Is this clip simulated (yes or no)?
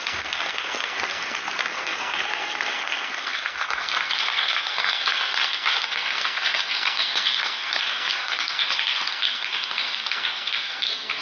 yes